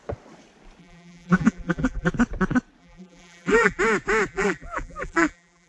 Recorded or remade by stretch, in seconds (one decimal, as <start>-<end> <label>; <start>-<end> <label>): 0.0-0.8 recorded; 0.8-2.1 remade; 2.1-2.8 recorded; 2.8-3.8 remade; 3.8-4.3 recorded; 4.3-5.7 remade